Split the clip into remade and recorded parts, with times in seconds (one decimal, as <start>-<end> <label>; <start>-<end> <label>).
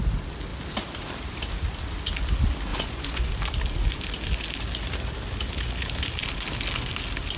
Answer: 0.0-2.7 recorded; 2.7-3.3 remade; 3.3-7.4 recorded